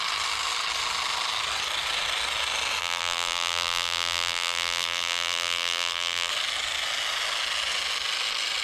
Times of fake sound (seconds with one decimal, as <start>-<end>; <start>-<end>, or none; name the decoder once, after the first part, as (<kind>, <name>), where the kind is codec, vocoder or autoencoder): 2.8-6.3 (vocoder, BigVGAN v2)